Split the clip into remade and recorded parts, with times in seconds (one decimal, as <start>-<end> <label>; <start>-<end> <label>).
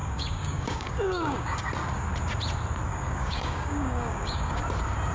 0.0-1.7 remade; 1.7-2.9 recorded; 2.9-4.6 remade; 4.6-5.1 recorded